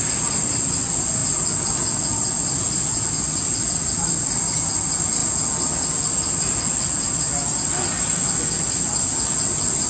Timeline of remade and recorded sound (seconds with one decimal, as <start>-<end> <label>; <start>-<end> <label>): 0.0-9.9 recorded